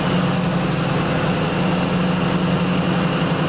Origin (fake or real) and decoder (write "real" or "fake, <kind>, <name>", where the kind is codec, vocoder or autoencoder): real